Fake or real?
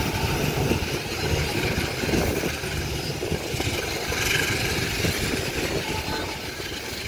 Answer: real